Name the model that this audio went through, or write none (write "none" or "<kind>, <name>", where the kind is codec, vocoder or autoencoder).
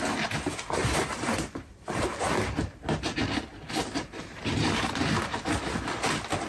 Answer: none